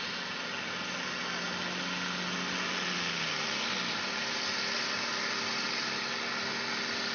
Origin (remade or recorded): recorded